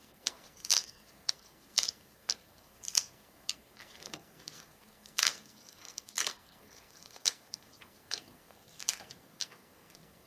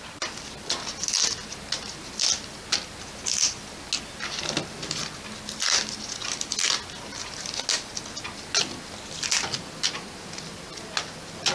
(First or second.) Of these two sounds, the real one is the second